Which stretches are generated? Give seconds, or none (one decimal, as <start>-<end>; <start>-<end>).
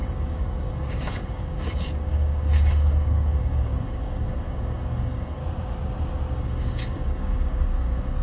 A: 0.0-5.4; 6.4-8.2